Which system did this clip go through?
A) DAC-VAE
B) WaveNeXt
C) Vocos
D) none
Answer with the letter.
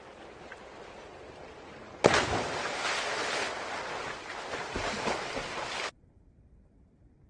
D